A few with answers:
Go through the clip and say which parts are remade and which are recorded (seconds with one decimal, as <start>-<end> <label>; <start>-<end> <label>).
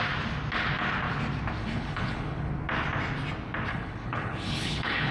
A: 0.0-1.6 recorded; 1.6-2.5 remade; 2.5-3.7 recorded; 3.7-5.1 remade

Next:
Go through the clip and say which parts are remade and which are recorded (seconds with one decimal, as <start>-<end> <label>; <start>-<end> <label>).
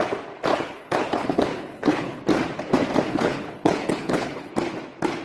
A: 0.0-0.5 recorded; 0.5-2.2 remade; 2.2-3.1 recorded; 3.1-4.5 remade; 4.5-5.2 recorded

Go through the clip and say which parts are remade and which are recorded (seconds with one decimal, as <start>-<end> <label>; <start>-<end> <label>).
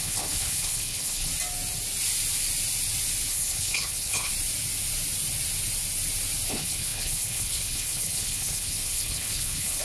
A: 0.0-1.3 remade; 1.3-3.3 recorded; 3.3-4.3 remade; 4.3-6.5 recorded; 6.5-9.8 remade